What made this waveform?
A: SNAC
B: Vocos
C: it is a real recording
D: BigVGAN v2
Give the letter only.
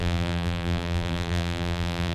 D